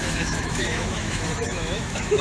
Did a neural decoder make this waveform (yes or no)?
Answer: yes